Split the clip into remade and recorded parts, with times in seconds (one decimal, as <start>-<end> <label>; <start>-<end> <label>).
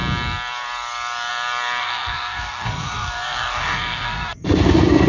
0.0-1.8 recorded; 1.8-5.1 remade